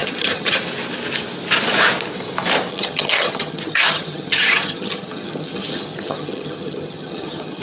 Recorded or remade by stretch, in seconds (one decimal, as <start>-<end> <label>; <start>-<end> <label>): 0.0-0.6 remade; 0.6-2.7 recorded; 2.7-7.6 remade